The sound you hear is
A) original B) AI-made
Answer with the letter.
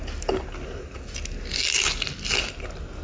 A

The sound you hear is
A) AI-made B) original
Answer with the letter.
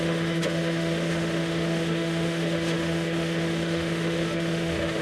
A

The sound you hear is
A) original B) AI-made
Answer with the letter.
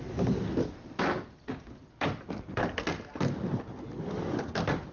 A